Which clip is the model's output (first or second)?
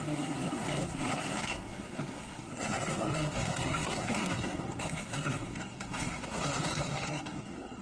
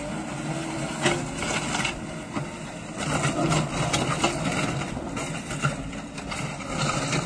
first